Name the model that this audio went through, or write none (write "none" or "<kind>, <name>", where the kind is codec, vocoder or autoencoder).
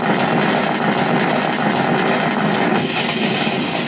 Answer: none